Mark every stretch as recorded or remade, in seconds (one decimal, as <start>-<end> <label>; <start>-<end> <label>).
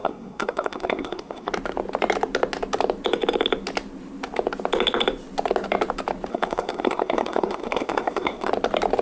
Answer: 0.0-1.5 remade; 1.5-6.3 recorded; 6.3-8.5 remade; 8.5-9.0 recorded